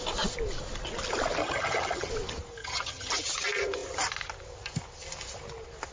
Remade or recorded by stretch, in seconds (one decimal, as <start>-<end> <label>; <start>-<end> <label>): 0.0-1.4 recorded; 1.4-2.1 remade; 2.1-2.6 recorded; 2.6-3.1 remade; 3.1-5.9 recorded

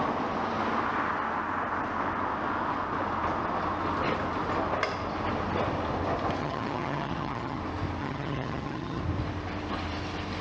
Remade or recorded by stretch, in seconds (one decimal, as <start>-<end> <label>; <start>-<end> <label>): 0.0-6.4 recorded; 6.4-7.6 remade; 7.6-8.0 recorded; 8.0-9.0 remade; 9.0-10.4 recorded

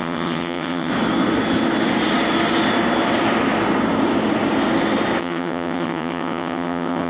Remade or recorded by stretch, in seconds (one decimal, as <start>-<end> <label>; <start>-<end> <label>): 0.0-0.9 remade; 0.9-5.2 recorded; 5.2-7.1 remade

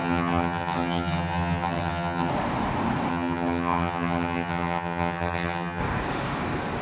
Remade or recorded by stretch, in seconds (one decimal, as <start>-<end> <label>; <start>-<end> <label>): 0.0-2.3 remade; 2.3-3.1 recorded; 3.1-5.8 remade; 5.8-6.8 recorded

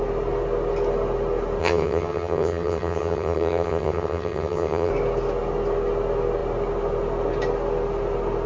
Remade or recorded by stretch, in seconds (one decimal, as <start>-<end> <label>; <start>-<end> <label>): 0.0-1.6 recorded; 1.6-4.9 remade; 4.9-8.5 recorded

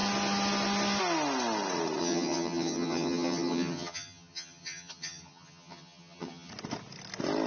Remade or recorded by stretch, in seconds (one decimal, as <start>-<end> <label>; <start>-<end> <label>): 0.0-2.0 recorded; 2.0-6.5 remade; 6.5-7.5 recorded